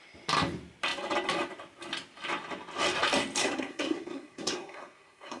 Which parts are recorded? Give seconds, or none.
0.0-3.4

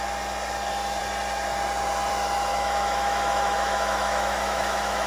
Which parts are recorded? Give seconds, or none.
0.0-2.5

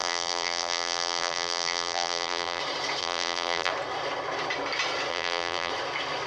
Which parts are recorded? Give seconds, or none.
2.6-3.0; 3.7-5.1; 5.7-6.3

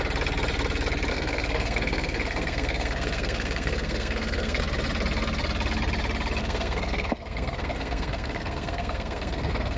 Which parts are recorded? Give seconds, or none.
0.0-1.1; 4.6-6.4